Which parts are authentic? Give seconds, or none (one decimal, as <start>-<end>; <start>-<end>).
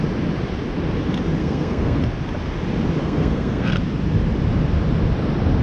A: 0.0-1.4; 2.0-3.0; 3.8-5.6